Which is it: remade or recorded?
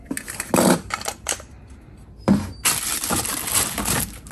recorded